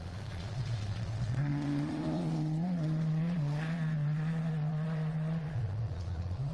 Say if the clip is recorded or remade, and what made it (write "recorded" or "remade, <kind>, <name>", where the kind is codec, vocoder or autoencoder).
remade, vocoder, Vocos